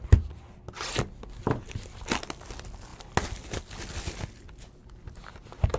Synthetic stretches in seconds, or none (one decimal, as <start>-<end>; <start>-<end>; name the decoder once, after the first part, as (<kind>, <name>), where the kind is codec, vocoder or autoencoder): none